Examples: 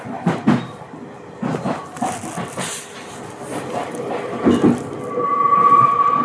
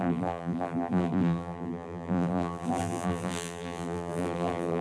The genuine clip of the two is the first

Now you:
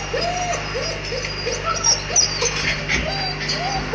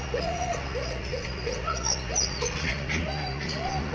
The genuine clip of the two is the first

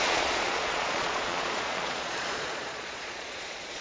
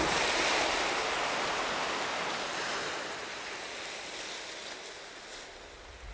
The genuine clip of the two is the second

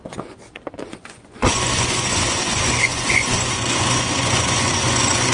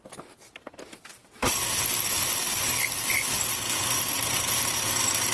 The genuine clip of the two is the second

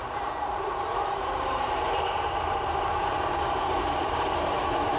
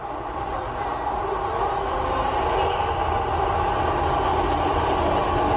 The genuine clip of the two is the second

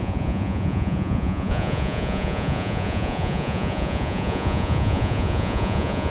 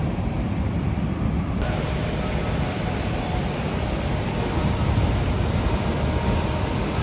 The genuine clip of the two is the second